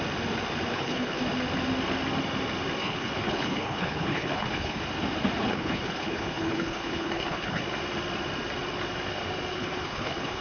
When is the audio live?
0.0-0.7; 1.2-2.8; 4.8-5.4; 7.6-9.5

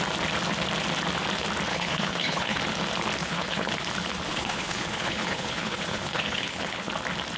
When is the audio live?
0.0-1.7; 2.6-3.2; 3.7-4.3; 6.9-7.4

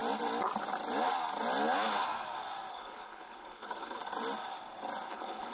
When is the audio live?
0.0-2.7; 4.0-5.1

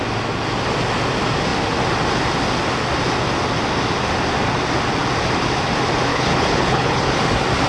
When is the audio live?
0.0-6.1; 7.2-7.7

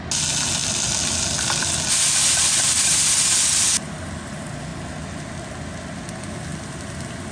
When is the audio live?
0.0-7.3

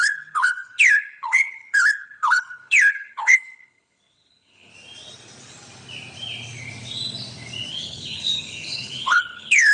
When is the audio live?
4.7-7.7